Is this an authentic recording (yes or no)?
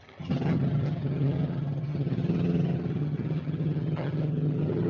no